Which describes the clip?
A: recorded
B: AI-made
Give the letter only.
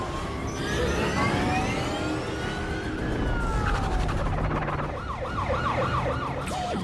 A